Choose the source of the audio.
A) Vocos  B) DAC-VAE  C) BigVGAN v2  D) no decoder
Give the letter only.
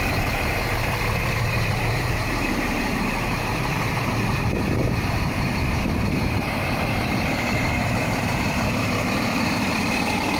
C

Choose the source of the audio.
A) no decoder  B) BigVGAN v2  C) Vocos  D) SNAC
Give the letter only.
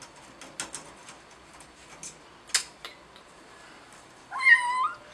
A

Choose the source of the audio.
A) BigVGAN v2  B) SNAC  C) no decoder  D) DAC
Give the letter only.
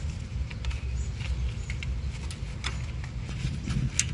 C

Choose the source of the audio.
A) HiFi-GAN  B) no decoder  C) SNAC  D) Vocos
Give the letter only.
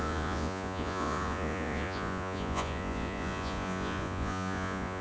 D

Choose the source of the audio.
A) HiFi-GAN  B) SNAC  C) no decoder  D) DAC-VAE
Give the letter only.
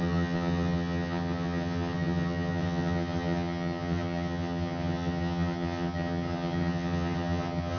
A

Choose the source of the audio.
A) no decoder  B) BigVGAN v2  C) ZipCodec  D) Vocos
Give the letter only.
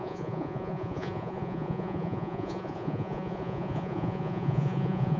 D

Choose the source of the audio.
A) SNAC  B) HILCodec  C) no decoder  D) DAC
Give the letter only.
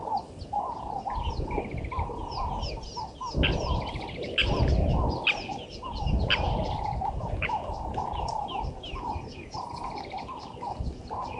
C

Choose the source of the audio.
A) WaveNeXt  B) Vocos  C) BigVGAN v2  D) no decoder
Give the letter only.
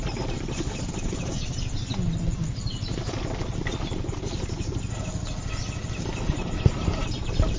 D